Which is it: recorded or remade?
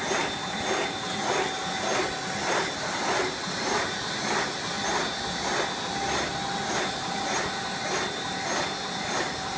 recorded